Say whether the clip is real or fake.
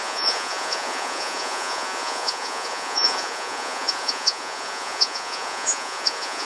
fake